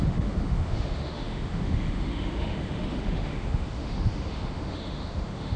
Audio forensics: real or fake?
fake